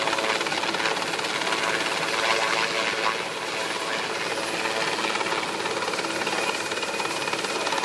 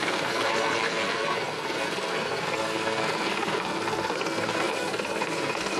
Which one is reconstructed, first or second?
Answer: second